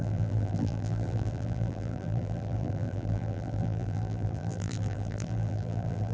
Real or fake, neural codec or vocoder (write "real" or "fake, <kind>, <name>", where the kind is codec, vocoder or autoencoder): fake, vocoder, BigVGAN v2